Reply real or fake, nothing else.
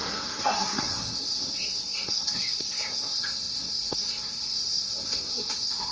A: fake